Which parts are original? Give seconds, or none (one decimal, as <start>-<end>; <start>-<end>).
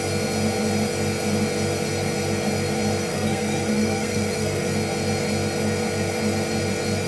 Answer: 0.0-3.1; 4.6-7.1